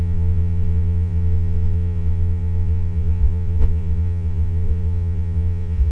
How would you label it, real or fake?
fake